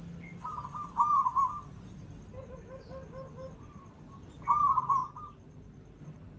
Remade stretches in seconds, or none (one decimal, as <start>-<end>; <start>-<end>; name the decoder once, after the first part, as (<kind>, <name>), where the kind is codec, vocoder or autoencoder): none